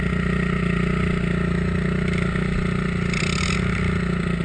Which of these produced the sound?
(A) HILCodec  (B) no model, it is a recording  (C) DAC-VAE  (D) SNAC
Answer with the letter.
B